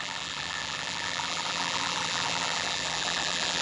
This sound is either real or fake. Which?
fake